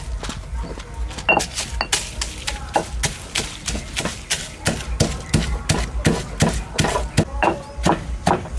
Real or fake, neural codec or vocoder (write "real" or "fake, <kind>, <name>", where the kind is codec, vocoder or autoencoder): real